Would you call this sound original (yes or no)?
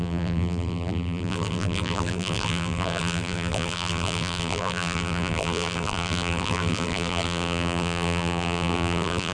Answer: no